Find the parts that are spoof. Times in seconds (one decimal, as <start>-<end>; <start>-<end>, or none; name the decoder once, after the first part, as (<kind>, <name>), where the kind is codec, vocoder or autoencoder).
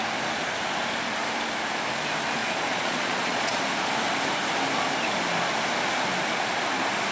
2.4-3.6 (vocoder, Vocos)